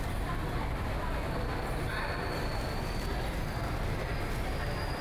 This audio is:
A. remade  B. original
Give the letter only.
B